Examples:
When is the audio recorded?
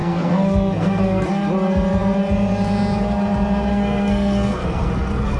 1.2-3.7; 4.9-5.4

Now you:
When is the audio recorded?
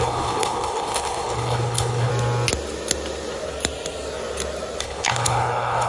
2.1-4.8